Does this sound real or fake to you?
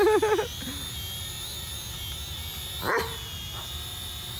real